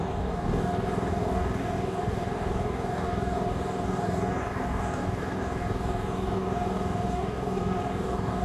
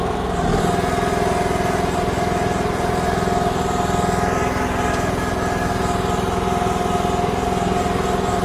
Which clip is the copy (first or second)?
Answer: first